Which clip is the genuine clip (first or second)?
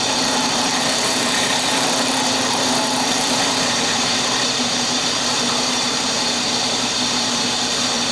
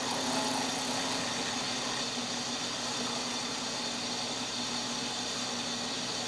second